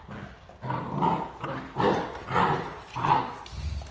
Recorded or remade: recorded